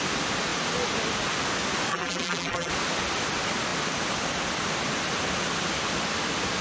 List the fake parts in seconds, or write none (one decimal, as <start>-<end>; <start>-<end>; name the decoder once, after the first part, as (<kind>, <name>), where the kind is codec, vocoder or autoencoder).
1.9-2.7 (vocoder, BigVGAN v2)